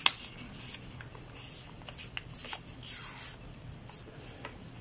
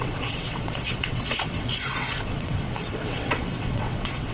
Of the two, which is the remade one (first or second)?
second